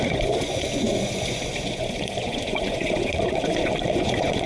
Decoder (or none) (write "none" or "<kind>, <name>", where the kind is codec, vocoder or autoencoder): vocoder, Vocos